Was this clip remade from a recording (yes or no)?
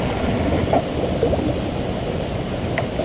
no